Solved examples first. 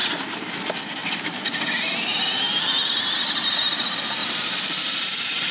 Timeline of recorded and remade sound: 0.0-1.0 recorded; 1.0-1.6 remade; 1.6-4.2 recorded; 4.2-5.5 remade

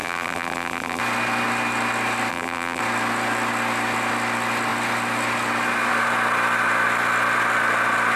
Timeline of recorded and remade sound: 0.0-1.0 remade; 1.0-2.3 recorded; 2.3-2.8 remade; 2.8-8.2 recorded

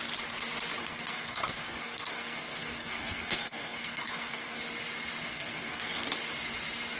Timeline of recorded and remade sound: 0.0-0.8 recorded; 0.8-4.6 remade; 4.6-5.2 recorded; 5.2-6.1 remade; 6.1-7.0 recorded

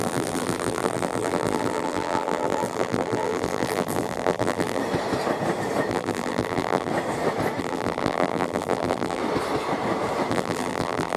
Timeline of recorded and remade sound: 0.0-4.8 remade; 4.8-5.9 recorded; 5.9-6.9 remade; 6.9-7.6 recorded; 7.6-9.2 remade; 9.2-10.3 recorded; 10.3-11.2 remade

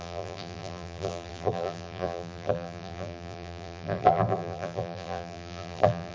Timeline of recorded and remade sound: 0.0-6.1 remade